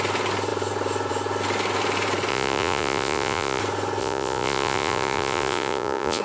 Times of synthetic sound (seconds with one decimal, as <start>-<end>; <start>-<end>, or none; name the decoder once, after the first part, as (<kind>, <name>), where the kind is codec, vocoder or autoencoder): 2.3-3.6 (vocoder, Vocos); 4.0-6.2